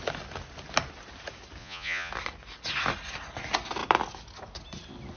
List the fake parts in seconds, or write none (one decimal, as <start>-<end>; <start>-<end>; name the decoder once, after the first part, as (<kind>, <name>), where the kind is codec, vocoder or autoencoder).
1.6-2.1 (vocoder, Vocos)